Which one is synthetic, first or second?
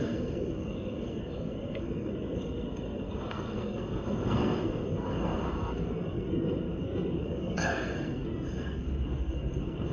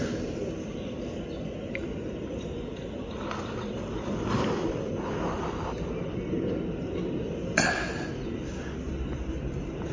first